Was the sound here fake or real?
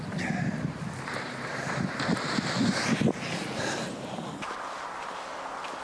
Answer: real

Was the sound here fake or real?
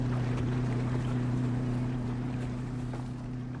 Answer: fake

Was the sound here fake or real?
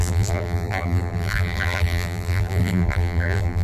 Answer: fake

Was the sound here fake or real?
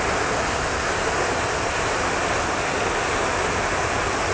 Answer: real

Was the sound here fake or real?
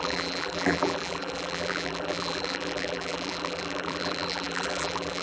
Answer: fake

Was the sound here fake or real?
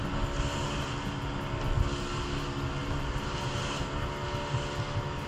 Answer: real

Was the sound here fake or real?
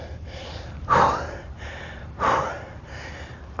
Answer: fake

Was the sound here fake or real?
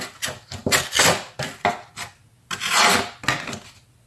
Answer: real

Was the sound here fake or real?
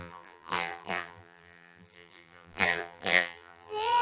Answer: fake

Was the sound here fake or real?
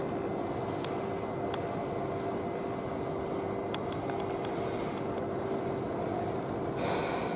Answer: real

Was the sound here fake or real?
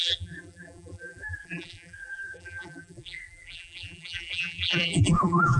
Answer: fake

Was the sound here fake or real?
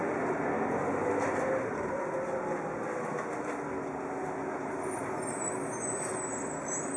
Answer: real